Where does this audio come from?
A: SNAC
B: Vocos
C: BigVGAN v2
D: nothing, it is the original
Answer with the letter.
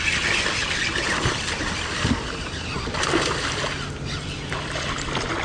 D